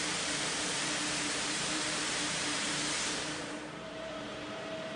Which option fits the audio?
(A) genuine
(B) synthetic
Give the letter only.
B